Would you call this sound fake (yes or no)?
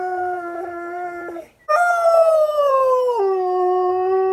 yes